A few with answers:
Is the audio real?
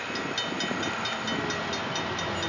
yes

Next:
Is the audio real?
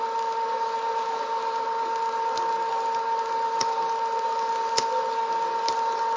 yes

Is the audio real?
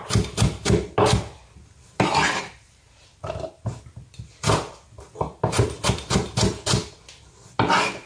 yes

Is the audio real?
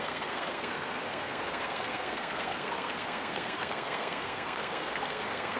no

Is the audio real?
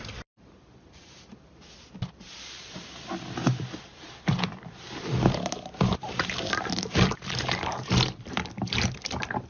no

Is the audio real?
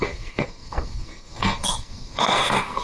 no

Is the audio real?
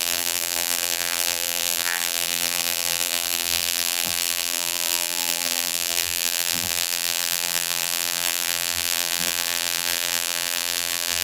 no